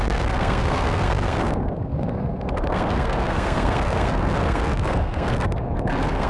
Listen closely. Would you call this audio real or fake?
fake